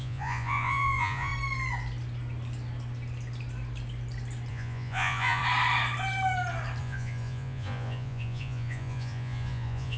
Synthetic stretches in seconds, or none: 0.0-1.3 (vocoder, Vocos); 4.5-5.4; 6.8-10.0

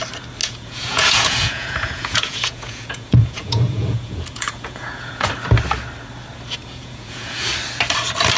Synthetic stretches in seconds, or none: 0.4-5.3 (vocoder, Vocos); 6.6-7.5

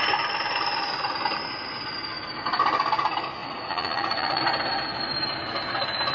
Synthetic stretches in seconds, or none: 3.4-4.4 (vocoder, Vocos)